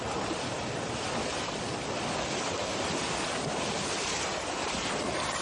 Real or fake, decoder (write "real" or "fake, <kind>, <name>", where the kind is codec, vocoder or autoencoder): fake, vocoder, BigVGAN v2